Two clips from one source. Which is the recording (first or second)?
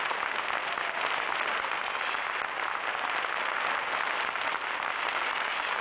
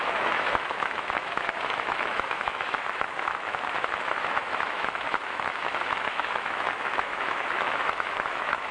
first